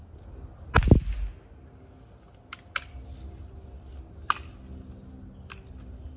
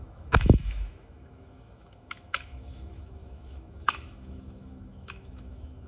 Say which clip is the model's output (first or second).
second